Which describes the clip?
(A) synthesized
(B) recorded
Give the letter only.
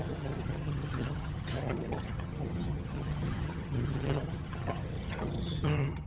A